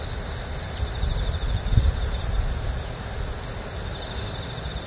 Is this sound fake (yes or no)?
no